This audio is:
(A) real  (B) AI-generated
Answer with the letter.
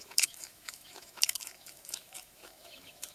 B